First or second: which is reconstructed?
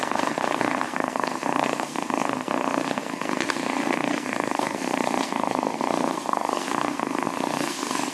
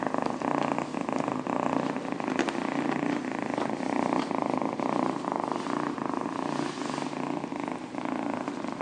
first